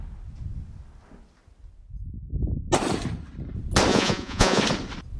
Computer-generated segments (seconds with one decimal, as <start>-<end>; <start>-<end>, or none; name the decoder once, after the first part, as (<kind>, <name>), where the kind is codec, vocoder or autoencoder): 3.9-4.6 (vocoder, Vocos)